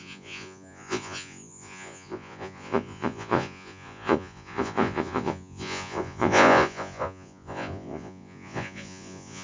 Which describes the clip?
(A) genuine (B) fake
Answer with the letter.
B